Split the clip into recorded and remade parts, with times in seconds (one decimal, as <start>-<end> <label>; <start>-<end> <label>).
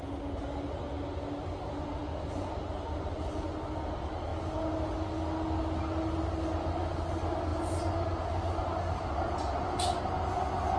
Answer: 0.0-10.8 recorded